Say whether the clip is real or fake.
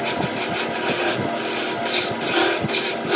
real